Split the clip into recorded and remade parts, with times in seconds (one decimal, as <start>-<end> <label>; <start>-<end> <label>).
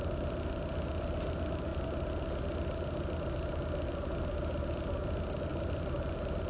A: 0.0-1.7 recorded; 1.7-3.9 remade; 3.9-5.5 recorded; 5.5-6.5 remade